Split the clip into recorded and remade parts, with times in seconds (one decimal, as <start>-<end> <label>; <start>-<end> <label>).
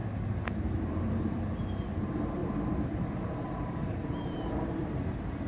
0.0-5.5 remade